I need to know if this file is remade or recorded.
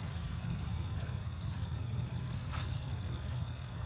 remade